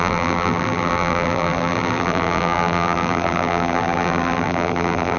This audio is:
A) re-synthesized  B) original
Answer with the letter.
A